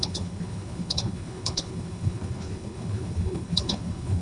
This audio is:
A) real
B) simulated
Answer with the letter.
B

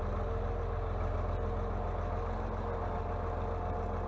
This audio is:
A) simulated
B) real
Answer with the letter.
B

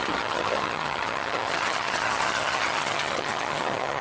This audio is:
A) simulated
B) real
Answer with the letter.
A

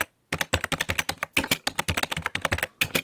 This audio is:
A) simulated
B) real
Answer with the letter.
B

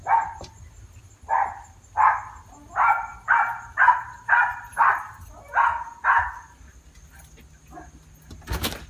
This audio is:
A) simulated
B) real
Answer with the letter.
B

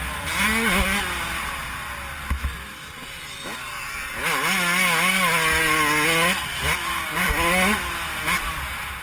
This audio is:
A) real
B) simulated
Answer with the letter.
A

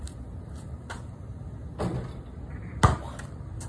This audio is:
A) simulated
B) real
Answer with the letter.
B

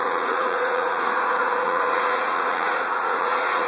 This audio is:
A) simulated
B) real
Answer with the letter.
A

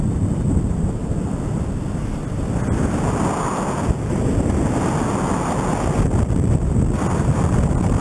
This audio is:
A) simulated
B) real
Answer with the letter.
B